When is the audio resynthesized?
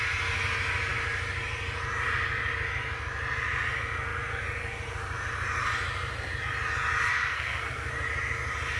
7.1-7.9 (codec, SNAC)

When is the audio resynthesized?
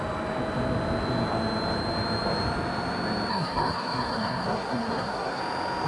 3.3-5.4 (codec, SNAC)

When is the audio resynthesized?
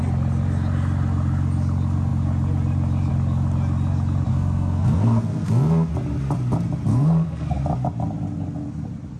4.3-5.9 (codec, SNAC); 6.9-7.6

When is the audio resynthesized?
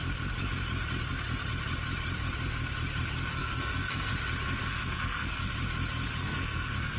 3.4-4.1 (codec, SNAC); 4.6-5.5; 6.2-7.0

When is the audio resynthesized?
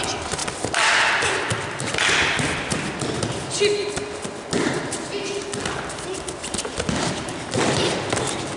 none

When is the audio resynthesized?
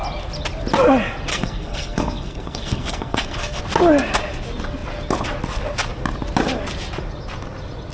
1.3-3.6 (codec, SNAC)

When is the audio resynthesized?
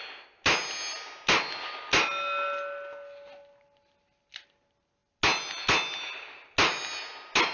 none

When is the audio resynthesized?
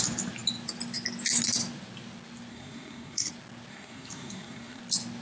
2.5-3.3 (codec, SNAC); 3.7-4.8